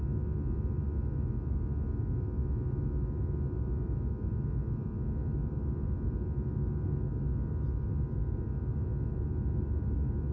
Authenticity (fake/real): real